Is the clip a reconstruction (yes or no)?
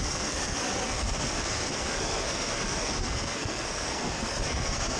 yes